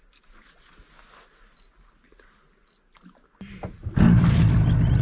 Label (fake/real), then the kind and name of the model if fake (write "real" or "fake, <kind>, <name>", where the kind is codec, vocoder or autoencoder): real